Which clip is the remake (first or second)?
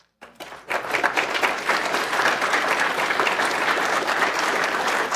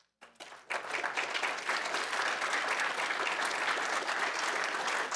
first